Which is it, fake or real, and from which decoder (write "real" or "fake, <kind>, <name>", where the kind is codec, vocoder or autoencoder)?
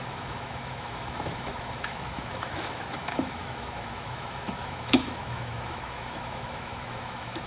fake, autoencoder, DAC-VAE